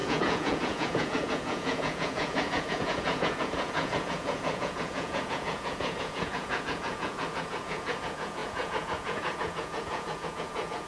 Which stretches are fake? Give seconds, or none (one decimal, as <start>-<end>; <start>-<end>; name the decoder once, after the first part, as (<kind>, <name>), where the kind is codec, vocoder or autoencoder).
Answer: 0.0-10.9 (vocoder, Vocos)